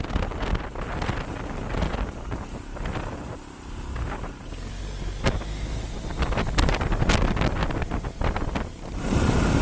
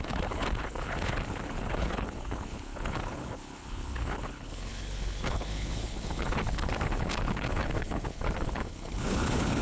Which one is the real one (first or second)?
first